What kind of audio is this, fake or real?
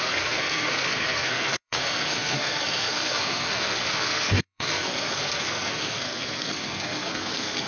fake